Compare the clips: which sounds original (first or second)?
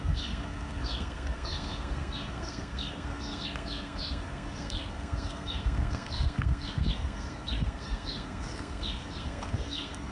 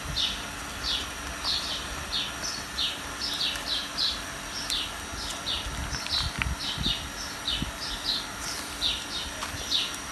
second